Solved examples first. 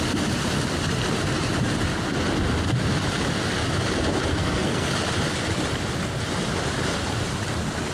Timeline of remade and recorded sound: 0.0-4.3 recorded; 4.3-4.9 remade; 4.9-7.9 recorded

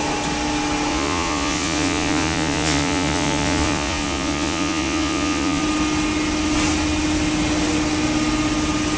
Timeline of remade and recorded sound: 0.0-0.9 recorded; 0.9-5.6 remade; 5.6-9.0 recorded

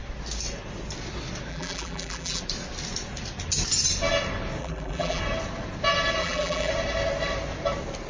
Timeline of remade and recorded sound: 0.0-1.5 recorded; 1.5-2.4 remade; 2.4-4.6 recorded; 4.6-5.2 remade; 5.2-6.2 recorded; 6.2-6.7 remade; 6.7-8.1 recorded

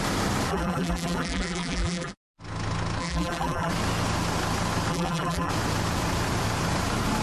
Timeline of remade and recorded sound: 0.0-0.5 recorded; 0.5-2.1 remade; 2.1-3.0 recorded; 3.0-3.7 remade; 3.7-4.9 recorded; 4.9-5.5 remade; 5.5-7.2 recorded

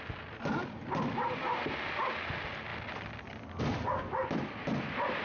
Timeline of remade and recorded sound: 0.0-5.2 recorded

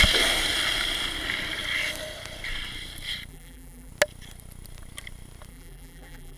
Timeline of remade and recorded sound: 0.0-3.3 recorded; 3.3-3.9 remade; 3.9-5.5 recorded; 5.5-6.4 remade

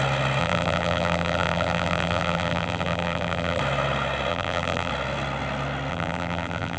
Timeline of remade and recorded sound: 0.0-0.4 recorded; 0.4-3.6 remade; 3.6-4.3 recorded; 4.3-4.9 remade; 4.9-5.9 recorded; 5.9-6.8 remade

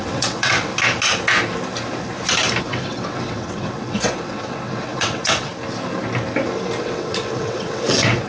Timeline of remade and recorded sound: 0.0-0.7 remade; 0.7-2.6 recorded; 2.6-5.5 remade; 5.5-6.8 recorded; 6.8-8.3 remade